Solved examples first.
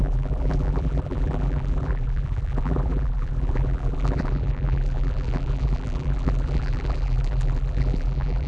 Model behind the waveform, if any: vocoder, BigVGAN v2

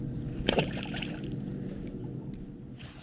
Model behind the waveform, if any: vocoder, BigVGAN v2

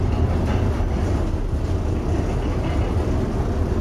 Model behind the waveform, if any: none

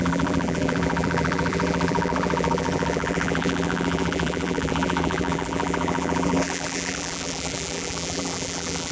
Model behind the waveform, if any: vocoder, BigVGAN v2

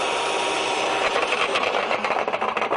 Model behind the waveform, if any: none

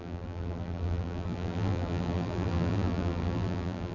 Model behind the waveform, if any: vocoder, BigVGAN v2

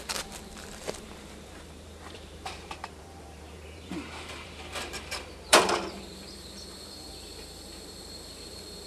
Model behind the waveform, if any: vocoder, BigVGAN v2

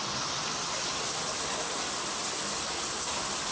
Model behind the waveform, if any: none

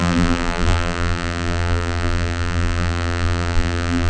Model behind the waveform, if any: vocoder, BigVGAN v2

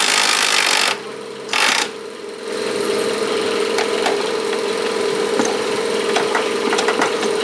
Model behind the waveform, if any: vocoder, BigVGAN v2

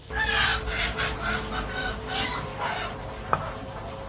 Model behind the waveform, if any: none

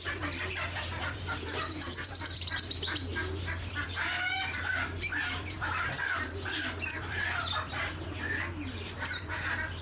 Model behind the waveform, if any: vocoder, BigVGAN v2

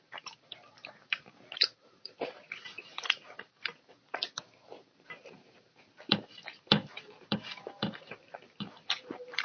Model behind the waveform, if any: vocoder, BigVGAN v2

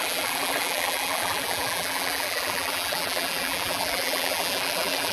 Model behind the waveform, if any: vocoder, BigVGAN v2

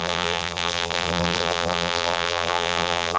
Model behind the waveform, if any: vocoder, BigVGAN v2